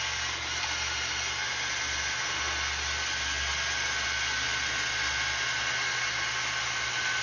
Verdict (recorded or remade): recorded